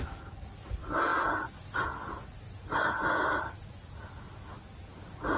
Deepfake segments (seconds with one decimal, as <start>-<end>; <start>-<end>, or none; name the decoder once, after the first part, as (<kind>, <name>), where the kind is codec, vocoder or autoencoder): none